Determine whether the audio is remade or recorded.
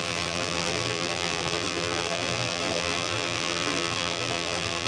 remade